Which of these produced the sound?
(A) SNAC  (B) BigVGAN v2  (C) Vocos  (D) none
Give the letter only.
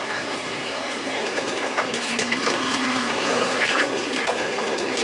A